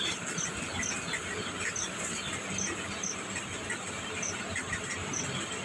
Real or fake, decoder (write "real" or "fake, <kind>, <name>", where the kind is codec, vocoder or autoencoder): fake, vocoder, BigVGAN v2